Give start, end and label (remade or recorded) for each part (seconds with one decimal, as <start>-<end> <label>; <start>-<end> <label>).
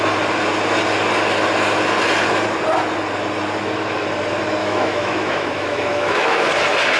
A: 0.0-4.6 recorded; 4.6-6.5 remade; 6.5-7.0 recorded